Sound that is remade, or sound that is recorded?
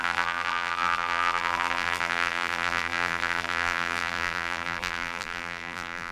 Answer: remade